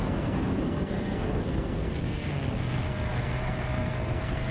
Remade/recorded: remade